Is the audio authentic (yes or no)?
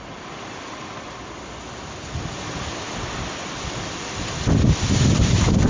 yes